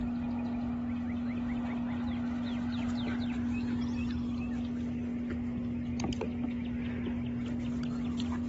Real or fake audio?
real